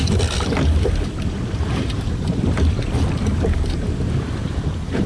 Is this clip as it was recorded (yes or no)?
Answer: no